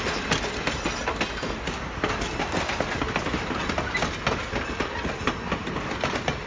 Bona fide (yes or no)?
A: yes